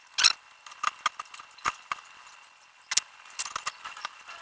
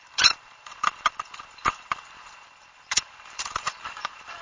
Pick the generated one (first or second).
second